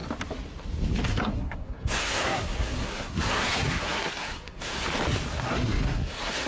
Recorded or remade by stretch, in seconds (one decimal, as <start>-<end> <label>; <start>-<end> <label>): 0.0-1.1 recorded; 1.1-4.8 remade; 4.8-5.3 recorded; 5.3-6.5 remade